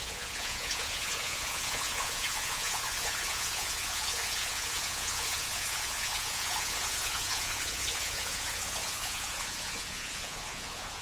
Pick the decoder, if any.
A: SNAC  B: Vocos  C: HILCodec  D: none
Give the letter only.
B